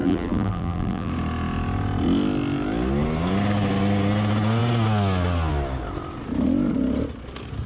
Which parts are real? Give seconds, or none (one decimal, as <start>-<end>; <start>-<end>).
1.1-7.7